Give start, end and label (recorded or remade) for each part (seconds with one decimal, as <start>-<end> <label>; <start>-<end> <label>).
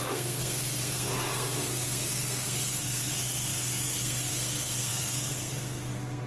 0.0-6.3 remade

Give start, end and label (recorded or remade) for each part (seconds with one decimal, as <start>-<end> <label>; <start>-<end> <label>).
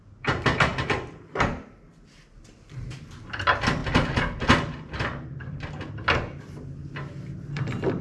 0.0-8.0 recorded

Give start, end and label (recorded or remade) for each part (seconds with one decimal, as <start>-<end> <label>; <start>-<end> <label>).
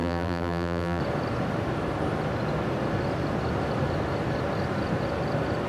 0.0-1.0 remade; 1.0-5.7 recorded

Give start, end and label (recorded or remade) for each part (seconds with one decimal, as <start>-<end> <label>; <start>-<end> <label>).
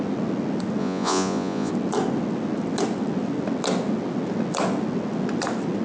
0.0-0.8 recorded; 0.8-1.7 remade; 1.7-5.8 recorded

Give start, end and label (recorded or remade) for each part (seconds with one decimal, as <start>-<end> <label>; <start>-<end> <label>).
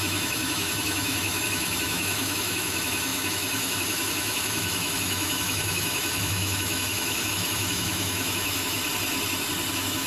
0.0-8.8 remade; 8.8-9.7 recorded; 9.7-10.1 remade